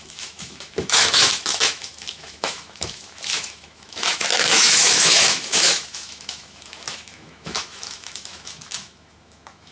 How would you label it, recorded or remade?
remade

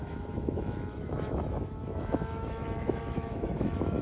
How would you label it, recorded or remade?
remade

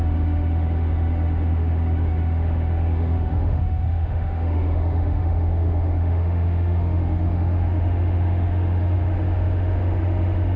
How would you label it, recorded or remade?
remade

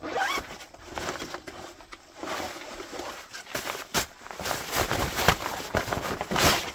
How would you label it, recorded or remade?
recorded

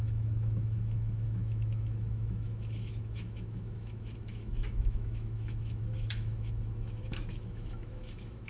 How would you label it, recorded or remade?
remade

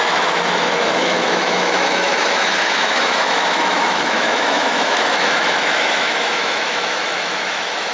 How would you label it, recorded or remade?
remade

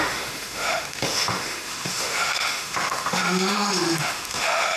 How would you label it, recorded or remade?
remade